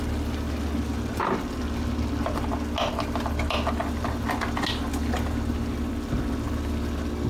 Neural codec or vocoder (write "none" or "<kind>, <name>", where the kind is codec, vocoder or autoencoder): none